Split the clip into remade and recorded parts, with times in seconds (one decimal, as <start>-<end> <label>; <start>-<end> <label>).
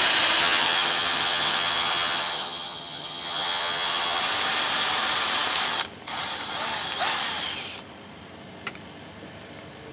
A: 0.0-0.4 recorded; 0.4-4.2 remade; 4.2-9.9 recorded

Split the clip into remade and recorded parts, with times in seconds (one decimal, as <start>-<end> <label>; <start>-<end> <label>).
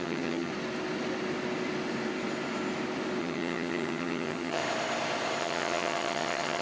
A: 0.0-0.5 remade; 0.5-3.2 recorded; 3.2-4.6 remade; 4.6-5.4 recorded; 5.4-6.6 remade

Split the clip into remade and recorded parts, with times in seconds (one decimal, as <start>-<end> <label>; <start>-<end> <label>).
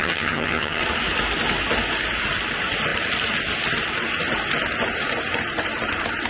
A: 0.0-0.8 remade; 0.8-6.3 recorded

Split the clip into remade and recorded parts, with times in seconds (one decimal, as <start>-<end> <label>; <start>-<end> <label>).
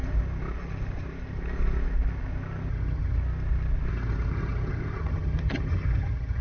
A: 0.0-2.7 recorded; 2.7-3.2 remade; 3.2-3.9 recorded; 3.9-6.4 remade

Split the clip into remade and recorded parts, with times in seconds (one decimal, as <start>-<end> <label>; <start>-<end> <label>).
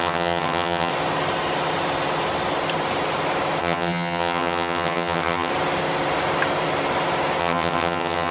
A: 0.0-0.9 remade; 0.9-3.6 recorded; 3.6-5.5 remade; 5.5-7.4 recorded; 7.4-8.3 remade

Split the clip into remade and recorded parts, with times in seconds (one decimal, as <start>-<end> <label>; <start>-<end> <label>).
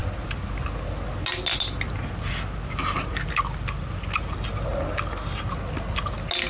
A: 0.0-6.5 recorded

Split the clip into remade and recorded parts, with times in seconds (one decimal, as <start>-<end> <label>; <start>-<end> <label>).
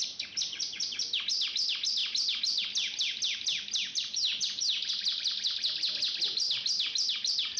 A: 0.0-7.6 recorded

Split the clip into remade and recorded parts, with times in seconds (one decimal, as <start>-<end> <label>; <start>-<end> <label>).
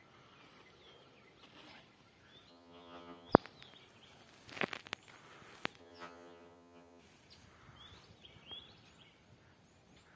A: 0.0-2.5 recorded; 2.5-3.3 remade; 3.3-5.8 recorded; 5.8-7.0 remade; 7.0-10.2 recorded